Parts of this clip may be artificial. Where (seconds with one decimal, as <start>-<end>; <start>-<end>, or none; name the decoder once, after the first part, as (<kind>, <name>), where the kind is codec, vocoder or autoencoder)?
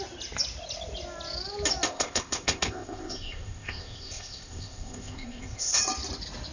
1.9-5.8 (codec, ZipCodec)